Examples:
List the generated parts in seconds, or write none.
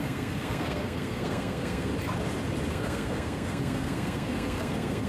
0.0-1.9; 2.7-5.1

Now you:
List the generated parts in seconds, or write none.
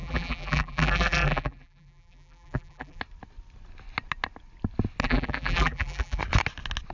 0.0-3.0; 5.0-6.2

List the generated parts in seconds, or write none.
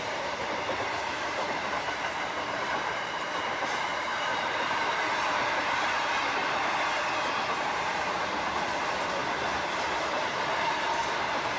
0.0-6.4; 7.5-9.2; 10.1-11.6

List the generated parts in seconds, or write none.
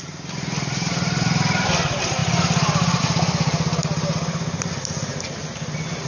none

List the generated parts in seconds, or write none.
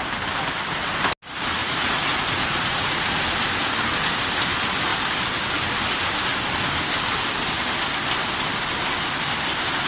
1.6-3.2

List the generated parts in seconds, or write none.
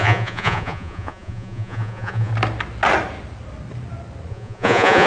0.0-2.3; 4.3-5.1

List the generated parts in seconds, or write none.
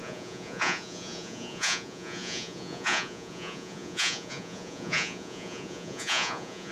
0.0-6.7